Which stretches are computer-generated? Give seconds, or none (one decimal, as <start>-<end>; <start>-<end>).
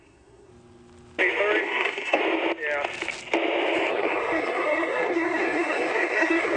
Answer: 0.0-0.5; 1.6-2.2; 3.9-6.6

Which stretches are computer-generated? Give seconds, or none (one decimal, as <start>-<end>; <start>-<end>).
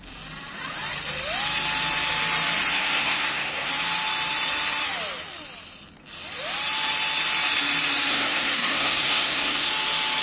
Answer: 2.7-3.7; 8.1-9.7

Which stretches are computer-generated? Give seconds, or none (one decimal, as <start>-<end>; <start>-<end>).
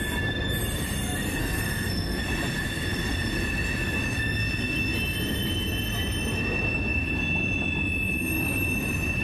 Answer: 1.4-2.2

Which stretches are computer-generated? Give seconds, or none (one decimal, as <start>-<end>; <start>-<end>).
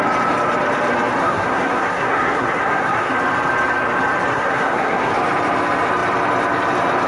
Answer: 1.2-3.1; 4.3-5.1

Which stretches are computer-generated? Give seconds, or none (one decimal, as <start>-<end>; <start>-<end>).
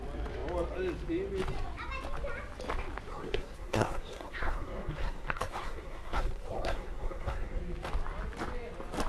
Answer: 3.1-7.6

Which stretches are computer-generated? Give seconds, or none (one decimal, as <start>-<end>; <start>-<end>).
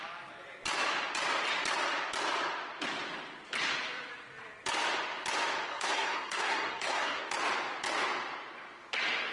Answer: 5.7-7.2